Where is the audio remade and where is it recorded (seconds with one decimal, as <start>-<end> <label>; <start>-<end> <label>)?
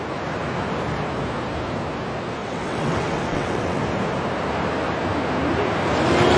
0.0-2.4 recorded; 2.4-3.8 remade; 3.8-6.4 recorded